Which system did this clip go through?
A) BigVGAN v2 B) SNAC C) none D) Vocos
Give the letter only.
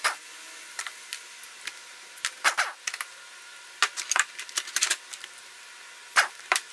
C